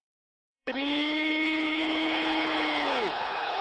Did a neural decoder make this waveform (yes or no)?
yes